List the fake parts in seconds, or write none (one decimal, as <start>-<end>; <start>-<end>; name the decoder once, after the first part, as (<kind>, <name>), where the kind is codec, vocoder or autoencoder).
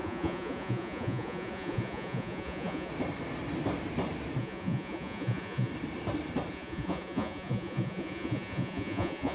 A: 0.0-2.9 (vocoder, Vocos); 4.4-5.7; 6.5-9.3